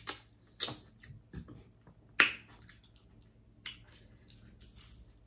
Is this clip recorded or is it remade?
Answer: recorded